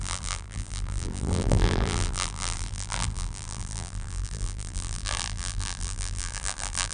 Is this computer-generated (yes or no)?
yes